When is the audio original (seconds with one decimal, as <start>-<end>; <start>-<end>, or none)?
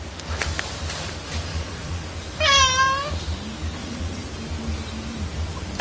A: 0.0-1.5; 2.0-3.8; 4.3-5.8